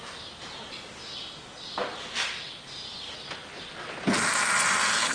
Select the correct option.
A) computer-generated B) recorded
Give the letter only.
B